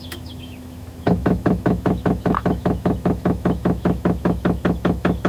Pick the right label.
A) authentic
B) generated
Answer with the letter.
B